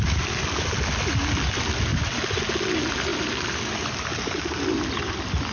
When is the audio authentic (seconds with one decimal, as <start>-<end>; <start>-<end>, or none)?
0.0-5.5